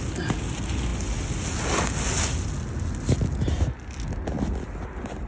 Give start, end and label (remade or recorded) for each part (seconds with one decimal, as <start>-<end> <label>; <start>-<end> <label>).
0.0-5.3 recorded

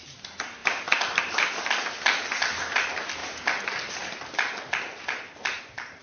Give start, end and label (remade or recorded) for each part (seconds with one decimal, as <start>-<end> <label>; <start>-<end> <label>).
0.0-6.0 recorded

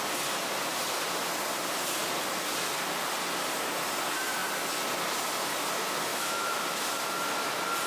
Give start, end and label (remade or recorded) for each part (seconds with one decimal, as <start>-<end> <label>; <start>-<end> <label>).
0.0-6.1 recorded; 6.1-6.6 remade; 6.6-7.9 recorded